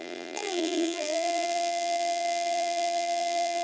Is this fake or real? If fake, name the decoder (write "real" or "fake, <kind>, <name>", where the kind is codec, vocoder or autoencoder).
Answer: fake, vocoder, BigVGAN v2